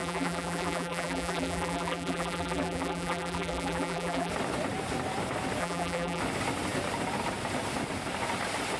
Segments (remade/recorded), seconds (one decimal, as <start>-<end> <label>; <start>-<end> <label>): 0.0-4.3 remade; 4.3-5.6 recorded; 5.6-6.2 remade; 6.2-8.8 recorded